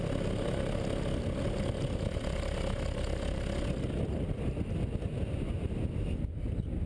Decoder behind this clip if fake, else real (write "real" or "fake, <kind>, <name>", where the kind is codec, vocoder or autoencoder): real